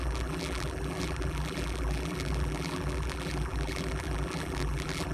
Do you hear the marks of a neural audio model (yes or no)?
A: yes